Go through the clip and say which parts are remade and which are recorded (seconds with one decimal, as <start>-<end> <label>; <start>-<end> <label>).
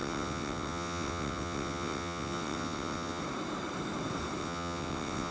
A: 0.0-3.2 remade; 3.2-4.4 recorded; 4.4-5.3 remade